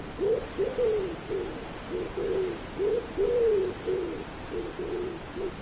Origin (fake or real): fake